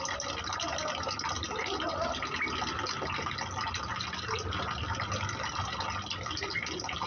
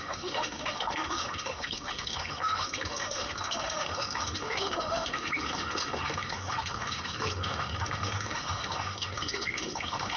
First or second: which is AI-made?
second